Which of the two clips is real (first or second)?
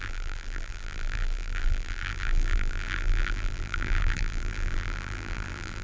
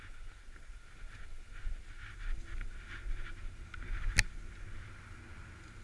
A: second